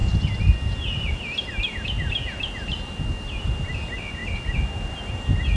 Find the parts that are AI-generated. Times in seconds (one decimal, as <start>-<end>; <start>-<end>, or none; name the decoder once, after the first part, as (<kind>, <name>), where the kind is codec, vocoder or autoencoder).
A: none